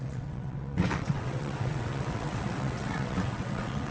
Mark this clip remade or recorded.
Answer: remade